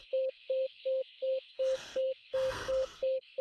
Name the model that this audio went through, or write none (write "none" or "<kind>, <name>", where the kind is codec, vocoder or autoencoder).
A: codec, SNAC